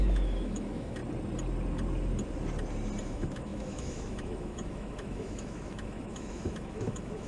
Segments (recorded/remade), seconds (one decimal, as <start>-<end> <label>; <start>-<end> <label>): 0.0-1.0 remade; 1.0-3.0 recorded; 3.0-7.3 remade